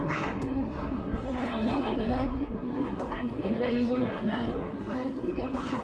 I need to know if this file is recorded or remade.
remade